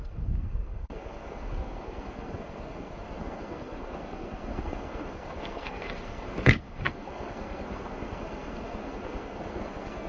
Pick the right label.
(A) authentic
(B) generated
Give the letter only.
B